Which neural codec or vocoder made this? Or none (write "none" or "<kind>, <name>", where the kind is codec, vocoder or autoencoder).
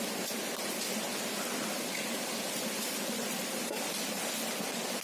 vocoder, BigVGAN v2